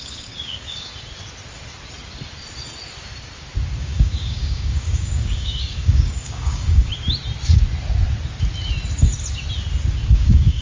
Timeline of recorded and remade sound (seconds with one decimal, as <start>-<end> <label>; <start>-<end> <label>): 0.0-0.9 remade; 0.9-3.8 recorded; 3.8-6.9 remade; 6.9-10.1 recorded; 10.1-10.6 remade